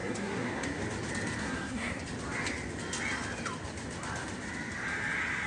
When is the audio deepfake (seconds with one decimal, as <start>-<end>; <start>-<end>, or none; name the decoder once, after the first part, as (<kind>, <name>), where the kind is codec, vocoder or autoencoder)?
0.0-0.8 (codec, SNAC); 1.4-2.0